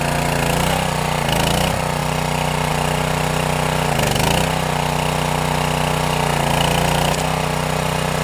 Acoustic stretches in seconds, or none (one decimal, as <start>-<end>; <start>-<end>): 0.0-8.2